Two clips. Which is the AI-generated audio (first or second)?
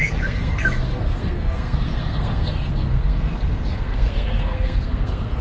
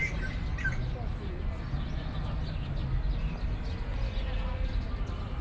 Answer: first